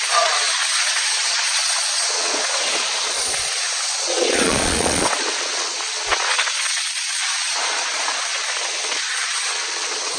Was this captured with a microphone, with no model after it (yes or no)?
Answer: no